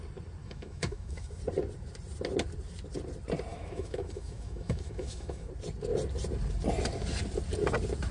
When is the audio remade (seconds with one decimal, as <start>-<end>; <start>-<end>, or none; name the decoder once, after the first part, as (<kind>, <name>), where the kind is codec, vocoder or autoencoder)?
0.4-1.4 (autoencoder, DAC-VAE); 3.5-5.5